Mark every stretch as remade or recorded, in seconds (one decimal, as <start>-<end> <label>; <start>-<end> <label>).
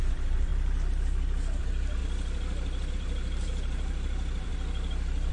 0.0-0.5 remade; 0.5-1.6 recorded; 1.6-2.0 remade; 2.0-2.9 recorded; 2.9-4.5 remade; 4.5-5.3 recorded